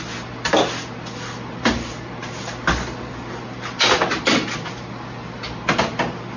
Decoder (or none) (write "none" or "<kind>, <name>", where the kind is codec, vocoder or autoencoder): none